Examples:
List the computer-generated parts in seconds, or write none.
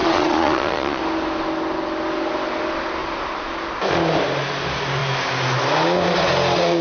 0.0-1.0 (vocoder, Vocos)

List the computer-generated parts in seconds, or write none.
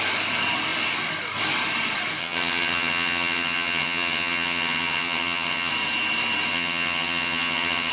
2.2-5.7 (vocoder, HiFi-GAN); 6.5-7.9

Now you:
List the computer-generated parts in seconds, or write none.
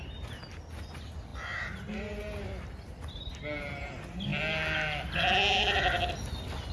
none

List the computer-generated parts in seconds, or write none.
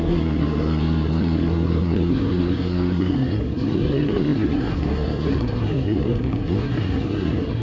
0.0-7.6 (codec, SNAC)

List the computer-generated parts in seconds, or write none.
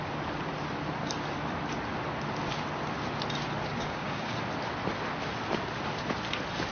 3.7-4.4 (codec, DAC)